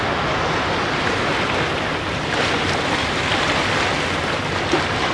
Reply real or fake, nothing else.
real